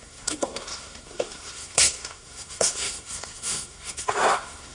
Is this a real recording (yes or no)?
no